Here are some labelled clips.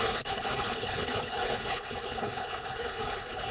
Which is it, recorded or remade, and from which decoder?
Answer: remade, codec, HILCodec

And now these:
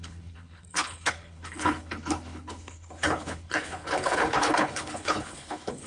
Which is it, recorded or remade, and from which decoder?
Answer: remade, codec, HILCodec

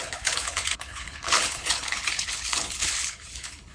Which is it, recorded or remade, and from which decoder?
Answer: remade, codec, HILCodec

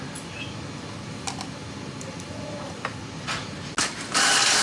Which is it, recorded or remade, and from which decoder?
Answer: recorded